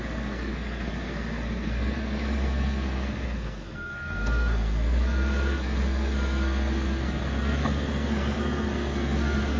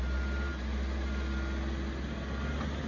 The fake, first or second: first